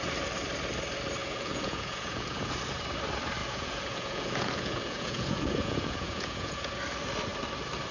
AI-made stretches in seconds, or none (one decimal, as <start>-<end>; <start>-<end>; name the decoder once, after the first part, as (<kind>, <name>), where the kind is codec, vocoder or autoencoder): 1.2-2.6 (vocoder, Vocos); 3.4-6.8